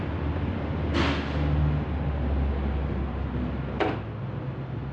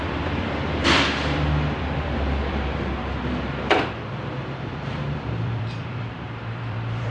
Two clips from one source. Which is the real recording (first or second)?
first